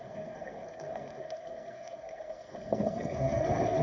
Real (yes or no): no